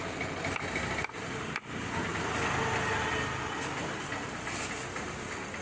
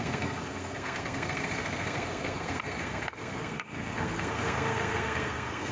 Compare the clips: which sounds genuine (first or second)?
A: first